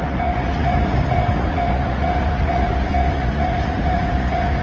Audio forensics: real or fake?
fake